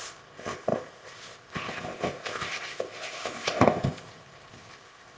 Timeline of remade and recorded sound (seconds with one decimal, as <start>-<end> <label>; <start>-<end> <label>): 0.0-5.2 remade